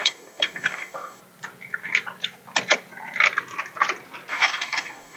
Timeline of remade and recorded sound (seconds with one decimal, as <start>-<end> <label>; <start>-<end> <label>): 0.0-1.2 remade; 1.2-4.3 recorded; 4.3-5.2 remade

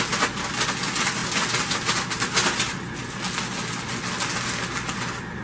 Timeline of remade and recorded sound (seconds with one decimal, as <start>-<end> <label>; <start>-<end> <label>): 0.0-5.4 recorded

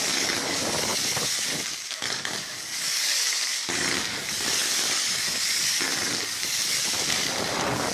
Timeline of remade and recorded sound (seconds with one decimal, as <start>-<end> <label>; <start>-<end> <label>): 0.0-7.9 remade